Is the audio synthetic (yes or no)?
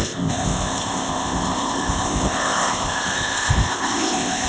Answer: yes